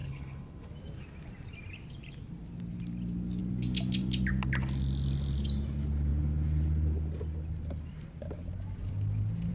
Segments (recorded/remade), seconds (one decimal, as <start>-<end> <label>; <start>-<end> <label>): 0.0-0.7 remade; 0.7-9.5 recorded